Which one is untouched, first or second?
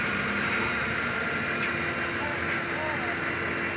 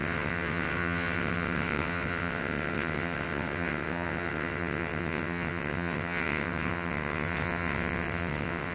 first